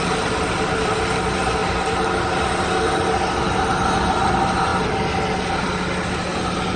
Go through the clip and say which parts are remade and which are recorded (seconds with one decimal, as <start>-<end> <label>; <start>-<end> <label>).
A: 0.0-6.8 recorded